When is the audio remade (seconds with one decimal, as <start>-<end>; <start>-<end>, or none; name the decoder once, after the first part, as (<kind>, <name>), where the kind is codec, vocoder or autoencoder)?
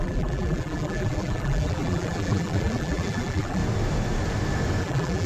0.0-3.6 (vocoder, BigVGAN v2); 4.8-5.3